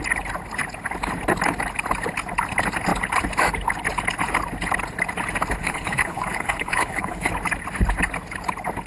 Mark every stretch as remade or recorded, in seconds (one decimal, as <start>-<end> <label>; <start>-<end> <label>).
0.0-5.6 recorded; 5.6-7.3 remade; 7.3-8.9 recorded